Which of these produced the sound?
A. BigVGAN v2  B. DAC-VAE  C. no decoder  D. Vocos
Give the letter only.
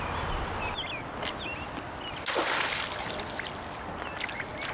C